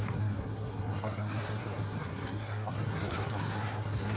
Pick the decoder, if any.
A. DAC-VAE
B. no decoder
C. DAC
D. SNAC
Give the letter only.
D